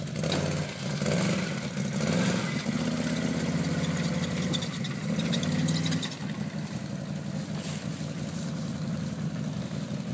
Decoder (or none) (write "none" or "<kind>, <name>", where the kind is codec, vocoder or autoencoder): none